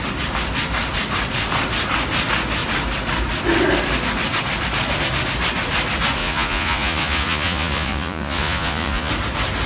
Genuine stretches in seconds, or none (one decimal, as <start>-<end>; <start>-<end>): 0.0-6.2; 9.1-9.7

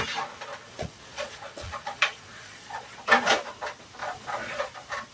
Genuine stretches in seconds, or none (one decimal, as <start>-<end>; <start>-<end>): 0.0-0.5; 3.0-4.0; 4.6-5.1

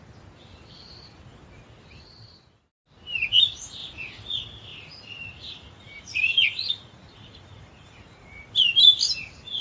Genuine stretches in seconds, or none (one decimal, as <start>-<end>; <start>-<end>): 0.0-4.7; 8.5-9.6